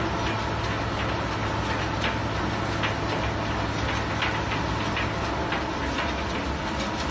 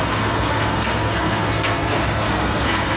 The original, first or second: first